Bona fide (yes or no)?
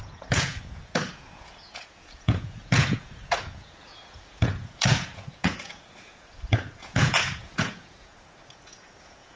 no